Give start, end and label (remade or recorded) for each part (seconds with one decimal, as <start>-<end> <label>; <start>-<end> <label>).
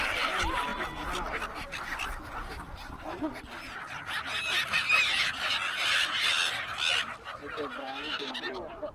0.0-7.8 recorded; 7.8-8.3 remade; 8.3-8.9 recorded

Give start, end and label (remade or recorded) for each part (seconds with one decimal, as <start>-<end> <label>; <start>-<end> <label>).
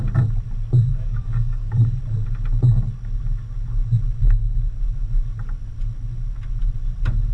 0.0-0.9 recorded; 0.9-2.0 remade; 2.0-7.3 recorded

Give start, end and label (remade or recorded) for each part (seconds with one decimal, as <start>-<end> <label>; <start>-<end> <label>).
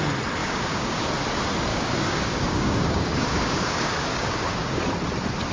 0.0-0.4 recorded; 0.4-1.0 remade; 1.0-1.7 recorded; 1.7-4.8 remade; 4.8-5.5 recorded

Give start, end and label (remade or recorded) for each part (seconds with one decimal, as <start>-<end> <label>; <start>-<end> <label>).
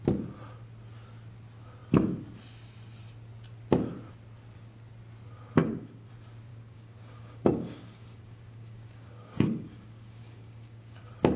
0.0-5.6 recorded; 5.6-6.1 remade; 6.1-6.5 recorded; 6.5-11.0 remade; 11.0-11.4 recorded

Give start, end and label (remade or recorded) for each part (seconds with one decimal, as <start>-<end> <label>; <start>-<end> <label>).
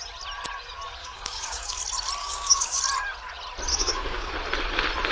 0.0-1.0 recorded; 1.0-1.8 remade; 1.8-2.2 recorded; 2.2-2.8 remade; 2.8-3.7 recorded; 3.7-4.3 remade; 4.3-5.1 recorded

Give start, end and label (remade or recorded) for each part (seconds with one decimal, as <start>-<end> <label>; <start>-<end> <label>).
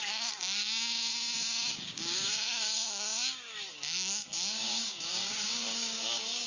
0.0-1.1 remade; 1.1-1.7 recorded; 1.7-6.5 remade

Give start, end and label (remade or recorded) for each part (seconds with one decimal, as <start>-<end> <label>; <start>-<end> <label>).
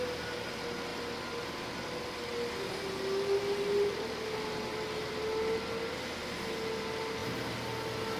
0.0-8.2 recorded